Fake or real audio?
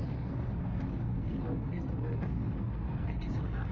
fake